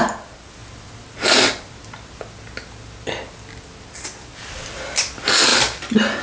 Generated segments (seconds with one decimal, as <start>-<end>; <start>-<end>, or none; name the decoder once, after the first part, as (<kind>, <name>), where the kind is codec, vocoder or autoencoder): none